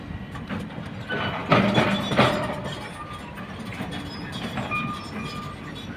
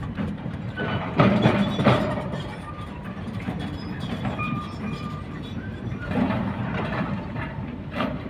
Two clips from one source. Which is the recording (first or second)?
first